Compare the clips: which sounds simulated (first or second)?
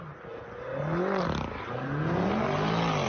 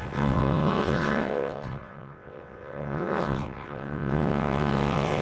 second